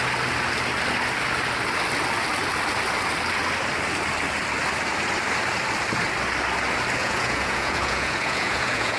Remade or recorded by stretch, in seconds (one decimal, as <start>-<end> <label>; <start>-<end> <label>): 0.0-7.0 recorded; 7.0-9.0 remade